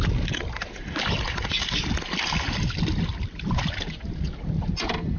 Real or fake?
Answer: real